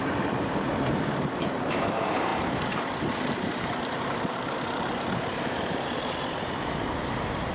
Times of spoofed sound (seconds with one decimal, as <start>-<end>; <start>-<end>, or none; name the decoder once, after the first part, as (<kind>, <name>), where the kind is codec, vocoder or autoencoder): 0.0-7.5 (vocoder, BigVGAN v2)